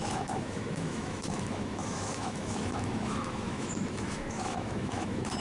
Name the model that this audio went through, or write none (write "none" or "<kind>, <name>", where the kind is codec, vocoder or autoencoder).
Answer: autoencoder, DAC-VAE